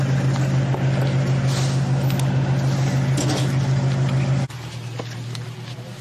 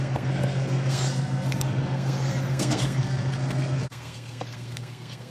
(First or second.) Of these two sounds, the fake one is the second